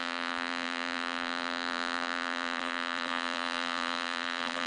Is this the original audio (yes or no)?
no